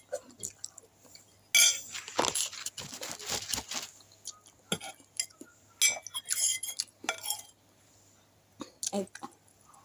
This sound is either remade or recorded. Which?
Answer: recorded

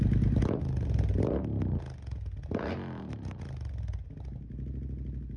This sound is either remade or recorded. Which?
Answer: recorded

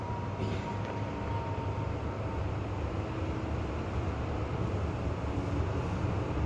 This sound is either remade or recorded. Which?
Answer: recorded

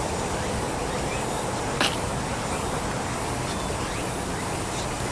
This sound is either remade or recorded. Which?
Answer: recorded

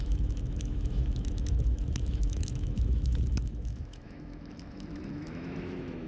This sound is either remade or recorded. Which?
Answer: remade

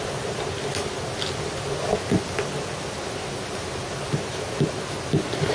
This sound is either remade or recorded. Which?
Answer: recorded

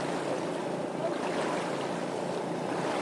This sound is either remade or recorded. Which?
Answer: recorded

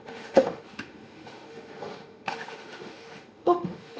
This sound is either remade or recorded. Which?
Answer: remade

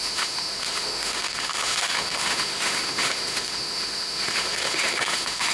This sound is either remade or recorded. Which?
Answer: remade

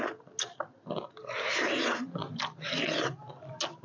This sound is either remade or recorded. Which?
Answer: recorded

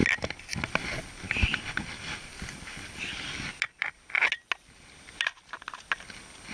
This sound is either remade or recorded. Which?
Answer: recorded